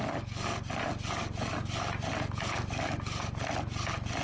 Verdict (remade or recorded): recorded